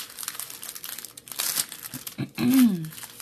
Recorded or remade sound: recorded